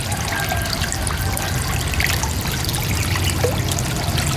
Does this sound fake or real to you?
real